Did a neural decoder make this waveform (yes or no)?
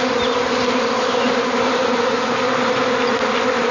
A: no